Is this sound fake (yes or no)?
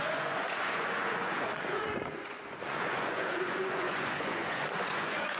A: yes